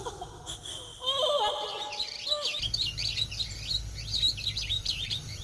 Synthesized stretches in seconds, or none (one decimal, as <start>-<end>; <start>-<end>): 4.7-5.4